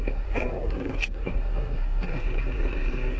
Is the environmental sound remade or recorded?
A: remade